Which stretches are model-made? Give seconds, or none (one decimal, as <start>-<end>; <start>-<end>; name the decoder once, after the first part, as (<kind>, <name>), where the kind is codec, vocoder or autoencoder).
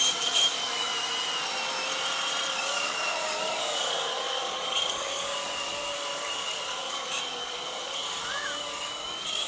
0.0-0.9 (codec, DAC); 2.5-9.5